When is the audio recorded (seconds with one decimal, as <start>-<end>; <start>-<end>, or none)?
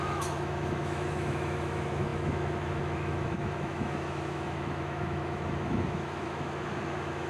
none